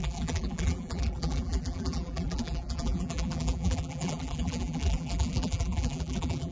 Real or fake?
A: fake